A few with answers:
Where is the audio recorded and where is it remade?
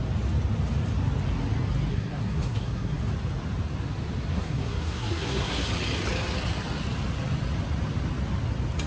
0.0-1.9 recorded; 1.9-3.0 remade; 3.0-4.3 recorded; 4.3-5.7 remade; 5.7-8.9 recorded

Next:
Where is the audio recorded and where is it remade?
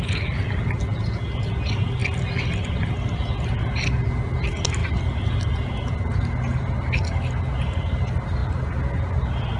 0.0-9.6 recorded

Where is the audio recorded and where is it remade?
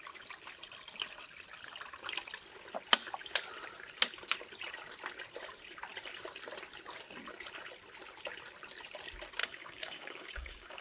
0.0-9.4 recorded; 9.4-10.8 remade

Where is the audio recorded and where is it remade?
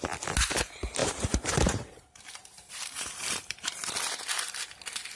0.0-1.0 recorded; 1.0-3.9 remade; 3.9-5.2 recorded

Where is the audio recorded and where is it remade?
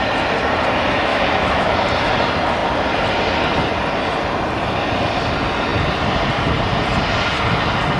0.0-1.1 recorded; 1.1-1.7 remade; 1.7-8.0 recorded